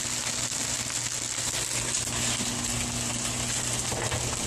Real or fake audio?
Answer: real